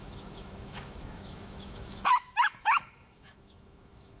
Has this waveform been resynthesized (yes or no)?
yes